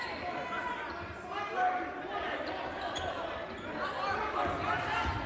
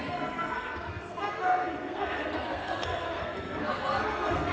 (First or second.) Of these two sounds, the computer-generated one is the second